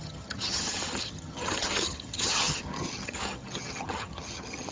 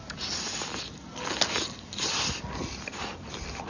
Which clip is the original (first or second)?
second